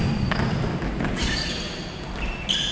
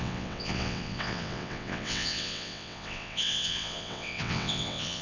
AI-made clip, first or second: second